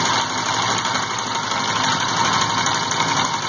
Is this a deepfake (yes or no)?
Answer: no